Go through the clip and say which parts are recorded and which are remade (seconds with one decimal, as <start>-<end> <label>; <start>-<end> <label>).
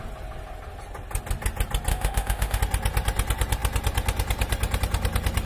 0.0-1.9 recorded; 1.9-2.6 remade; 2.6-5.5 recorded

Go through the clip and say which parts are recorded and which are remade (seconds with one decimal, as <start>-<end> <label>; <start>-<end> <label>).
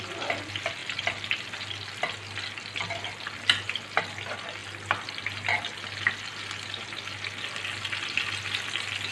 0.0-9.1 recorded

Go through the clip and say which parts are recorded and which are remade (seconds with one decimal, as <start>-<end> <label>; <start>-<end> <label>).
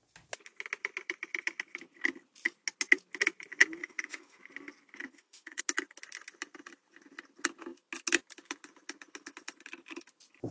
0.0-3.8 recorded; 3.8-4.4 remade; 4.4-5.1 recorded; 5.1-5.6 remade; 5.6-10.5 recorded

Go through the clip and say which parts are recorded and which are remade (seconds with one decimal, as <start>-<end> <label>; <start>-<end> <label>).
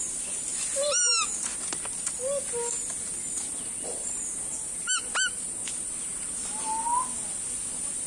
0.0-8.1 recorded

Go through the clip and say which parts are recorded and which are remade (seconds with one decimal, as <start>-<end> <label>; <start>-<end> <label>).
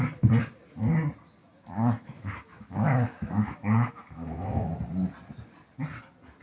0.0-1.4 recorded; 1.4-4.7 remade; 4.7-6.4 recorded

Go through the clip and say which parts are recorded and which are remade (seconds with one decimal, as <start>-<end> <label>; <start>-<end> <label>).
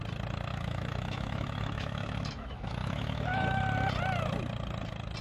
0.0-0.5 recorded; 0.5-3.6 remade; 3.6-5.2 recorded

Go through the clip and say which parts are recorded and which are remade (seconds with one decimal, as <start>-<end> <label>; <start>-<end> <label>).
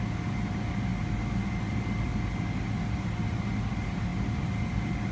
0.0-5.1 recorded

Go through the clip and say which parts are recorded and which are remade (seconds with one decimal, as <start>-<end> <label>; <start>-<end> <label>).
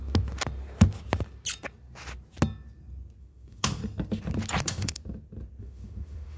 0.0-3.2 recorded; 3.2-3.8 remade; 3.8-4.6 recorded; 4.6-5.0 remade; 5.0-5.6 recorded; 5.6-6.4 remade